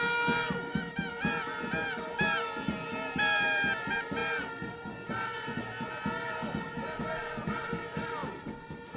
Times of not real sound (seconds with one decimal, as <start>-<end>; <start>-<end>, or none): none